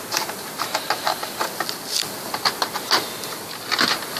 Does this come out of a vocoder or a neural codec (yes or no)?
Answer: no